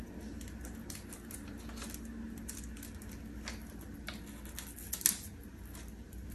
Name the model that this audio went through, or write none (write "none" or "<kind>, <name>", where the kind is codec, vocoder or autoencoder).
none